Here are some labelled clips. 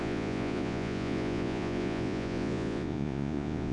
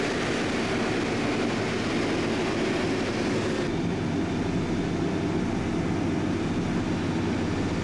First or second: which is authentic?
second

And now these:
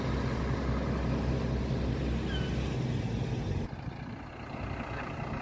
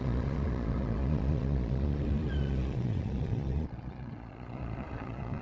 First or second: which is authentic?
first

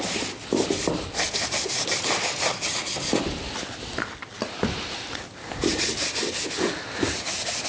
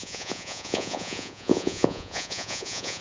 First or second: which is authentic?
first